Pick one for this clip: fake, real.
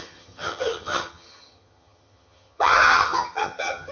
fake